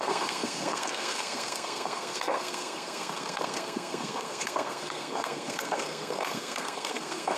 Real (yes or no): no